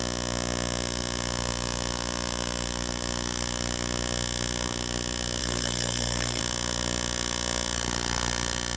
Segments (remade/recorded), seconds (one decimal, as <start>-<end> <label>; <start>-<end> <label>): 0.0-5.4 recorded; 5.4-6.4 remade; 6.4-8.8 recorded